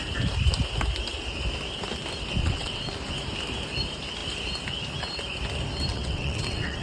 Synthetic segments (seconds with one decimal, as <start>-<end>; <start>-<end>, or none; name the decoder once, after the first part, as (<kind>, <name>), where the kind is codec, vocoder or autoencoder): 2.4-2.9 (vocoder, WaveNeXt); 5.9-6.8

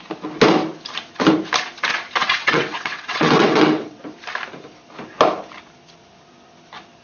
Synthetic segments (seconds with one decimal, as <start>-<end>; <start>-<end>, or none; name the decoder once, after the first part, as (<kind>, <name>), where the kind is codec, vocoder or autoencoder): 2.2-4.0 (vocoder, WaveNeXt)

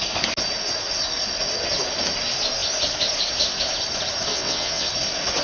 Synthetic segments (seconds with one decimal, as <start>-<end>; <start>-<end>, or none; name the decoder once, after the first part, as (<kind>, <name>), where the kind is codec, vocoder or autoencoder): 4.3-4.9 (vocoder, WaveNeXt)

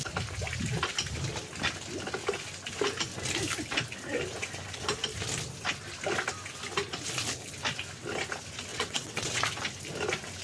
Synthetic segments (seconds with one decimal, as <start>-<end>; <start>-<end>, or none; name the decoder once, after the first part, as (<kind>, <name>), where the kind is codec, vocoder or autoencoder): 8.7-9.4 (vocoder, WaveNeXt)

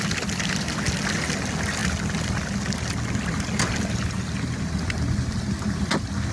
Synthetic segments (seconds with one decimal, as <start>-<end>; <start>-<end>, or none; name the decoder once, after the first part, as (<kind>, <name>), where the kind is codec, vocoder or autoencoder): none

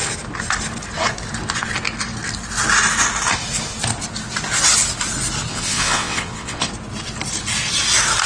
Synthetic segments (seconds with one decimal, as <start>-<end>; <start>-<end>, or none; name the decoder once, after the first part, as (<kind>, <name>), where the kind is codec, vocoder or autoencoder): 5.5-6.7 (vocoder, WaveNeXt)

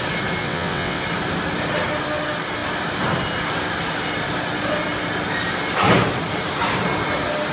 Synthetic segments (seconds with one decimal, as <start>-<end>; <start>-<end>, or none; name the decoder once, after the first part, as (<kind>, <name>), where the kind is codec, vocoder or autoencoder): 0.4-1.0 (vocoder, WaveNeXt)

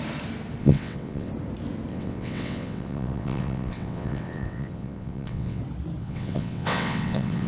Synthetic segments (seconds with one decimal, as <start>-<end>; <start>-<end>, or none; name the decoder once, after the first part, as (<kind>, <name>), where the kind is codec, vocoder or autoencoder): 0.6-1.3 (vocoder, WaveNeXt); 1.9-5.6; 6.0-7.5